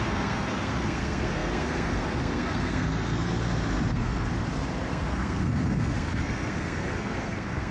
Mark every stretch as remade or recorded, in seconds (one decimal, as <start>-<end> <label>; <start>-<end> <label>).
0.0-3.3 remade; 3.3-3.9 recorded; 3.9-4.3 remade; 4.3-4.9 recorded; 4.9-7.7 remade